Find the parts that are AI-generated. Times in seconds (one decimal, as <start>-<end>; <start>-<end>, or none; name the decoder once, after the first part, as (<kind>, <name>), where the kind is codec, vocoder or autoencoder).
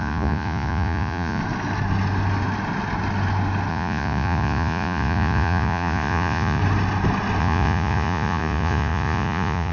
0.0-1.4 (vocoder, Vocos); 3.7-6.6; 7.4-9.7